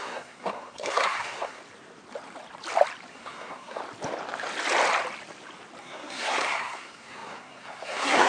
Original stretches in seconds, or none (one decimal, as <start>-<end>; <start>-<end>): 1.6-3.1; 3.8-5.8